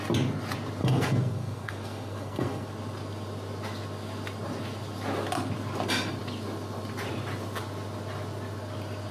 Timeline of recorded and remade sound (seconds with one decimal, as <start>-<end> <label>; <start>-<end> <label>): 0.0-0.8 recorded; 0.8-2.7 remade; 2.7-9.1 recorded